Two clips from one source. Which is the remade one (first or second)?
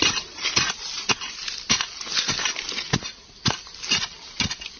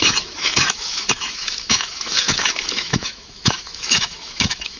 second